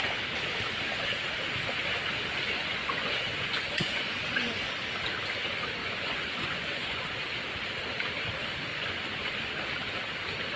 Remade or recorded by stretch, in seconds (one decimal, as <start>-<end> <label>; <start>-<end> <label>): 0.0-2.6 recorded; 2.6-4.6 remade; 4.6-5.8 recorded; 5.8-7.0 remade; 7.0-8.7 recorded; 8.7-9.5 remade; 9.5-10.6 recorded